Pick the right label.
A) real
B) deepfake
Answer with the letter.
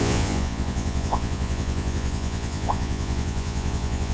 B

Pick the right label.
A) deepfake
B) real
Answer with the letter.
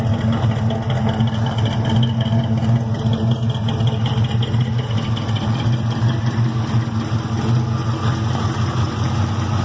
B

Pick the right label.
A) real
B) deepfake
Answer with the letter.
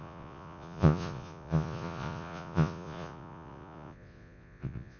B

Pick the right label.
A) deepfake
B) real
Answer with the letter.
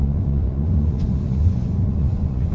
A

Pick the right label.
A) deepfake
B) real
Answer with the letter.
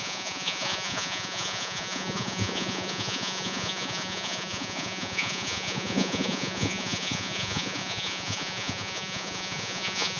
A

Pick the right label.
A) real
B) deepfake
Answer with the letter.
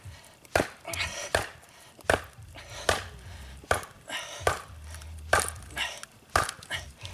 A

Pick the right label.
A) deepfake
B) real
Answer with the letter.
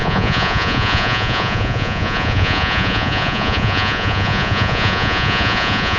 A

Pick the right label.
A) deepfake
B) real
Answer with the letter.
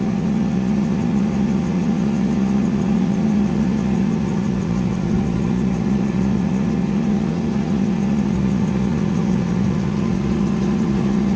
A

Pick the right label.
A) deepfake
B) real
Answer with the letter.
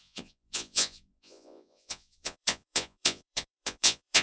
A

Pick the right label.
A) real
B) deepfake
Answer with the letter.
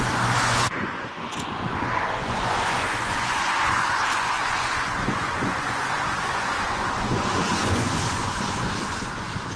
B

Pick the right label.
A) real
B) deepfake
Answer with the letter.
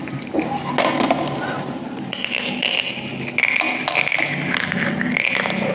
A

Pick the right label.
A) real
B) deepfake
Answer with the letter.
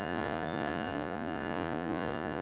B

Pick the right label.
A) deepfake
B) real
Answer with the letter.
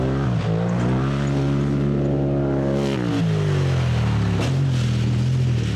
B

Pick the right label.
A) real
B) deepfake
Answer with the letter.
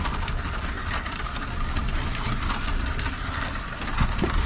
A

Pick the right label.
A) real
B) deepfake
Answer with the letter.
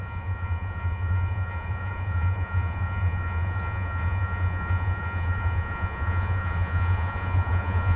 B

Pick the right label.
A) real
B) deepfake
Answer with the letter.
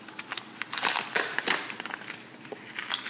A